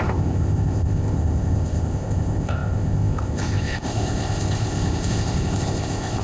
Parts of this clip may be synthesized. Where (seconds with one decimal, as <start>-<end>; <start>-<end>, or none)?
0.0-6.2